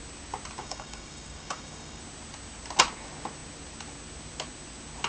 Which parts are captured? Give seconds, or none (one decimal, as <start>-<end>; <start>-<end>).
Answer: 0.0-0.6; 2.0-5.1